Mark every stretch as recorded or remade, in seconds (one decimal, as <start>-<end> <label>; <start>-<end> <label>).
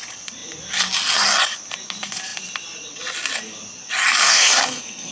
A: 0.0-4.2 recorded; 4.2-5.1 remade